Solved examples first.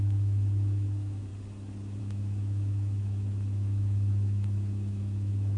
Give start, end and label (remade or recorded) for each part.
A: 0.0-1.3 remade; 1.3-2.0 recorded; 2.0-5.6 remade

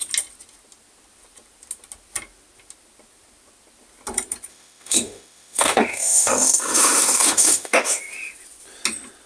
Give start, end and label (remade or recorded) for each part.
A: 0.0-4.5 recorded; 4.5-8.0 remade; 8.0-9.3 recorded

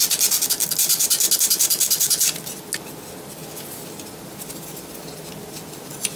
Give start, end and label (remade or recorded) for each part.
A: 0.0-6.2 recorded

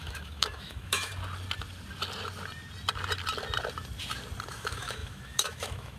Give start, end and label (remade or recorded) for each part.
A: 0.0-1.1 remade; 1.1-4.5 recorded; 4.5-6.0 remade

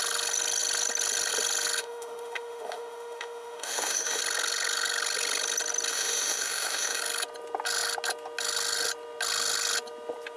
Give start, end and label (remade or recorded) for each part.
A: 0.0-1.8 recorded; 1.8-4.2 remade; 4.2-5.9 recorded; 5.9-7.0 remade; 7.0-10.4 recorded

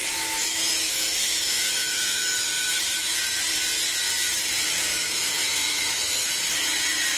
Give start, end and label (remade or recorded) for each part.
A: 0.0-3.2 remade; 3.2-4.9 recorded; 4.9-6.3 remade; 6.3-7.2 recorded

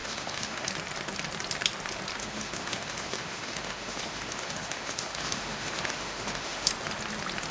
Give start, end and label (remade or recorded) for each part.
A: 0.0-0.7 remade; 0.7-2.2 recorded; 2.2-6.7 remade; 6.7-7.5 recorded

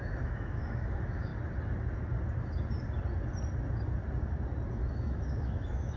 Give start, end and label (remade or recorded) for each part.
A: 0.0-1.3 remade; 1.3-4.7 recorded; 4.7-6.0 remade